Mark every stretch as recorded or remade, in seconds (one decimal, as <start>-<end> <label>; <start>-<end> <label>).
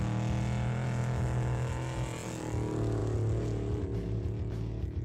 0.0-1.0 recorded; 1.0-1.7 remade; 1.7-5.0 recorded